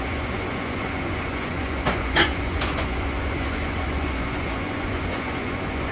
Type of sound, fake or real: fake